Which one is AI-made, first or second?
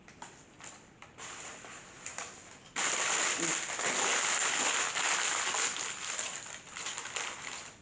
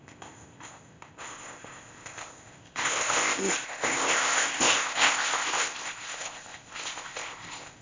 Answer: second